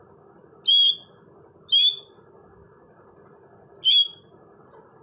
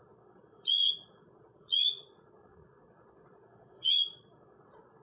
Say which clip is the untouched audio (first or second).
first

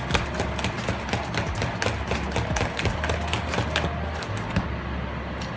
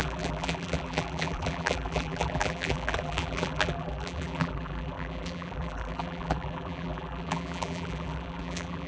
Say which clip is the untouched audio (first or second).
first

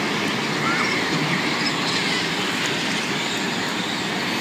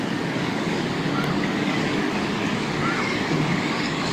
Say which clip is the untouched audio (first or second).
first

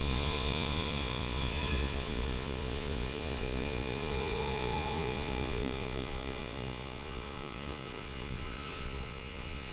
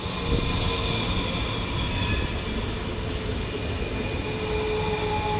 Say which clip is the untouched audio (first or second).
second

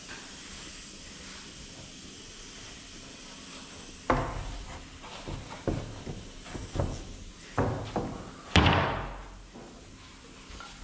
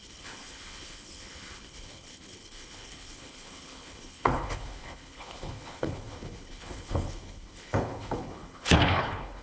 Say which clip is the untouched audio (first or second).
first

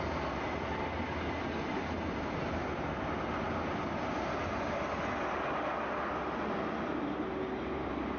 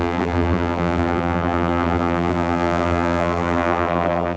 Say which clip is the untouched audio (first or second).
first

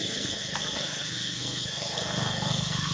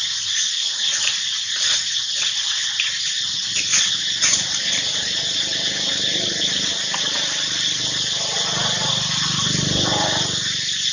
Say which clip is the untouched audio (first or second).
second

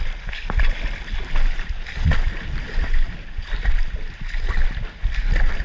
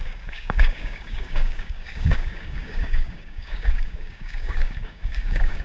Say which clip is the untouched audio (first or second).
first